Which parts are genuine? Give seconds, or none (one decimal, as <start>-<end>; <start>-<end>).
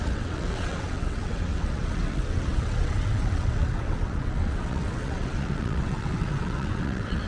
none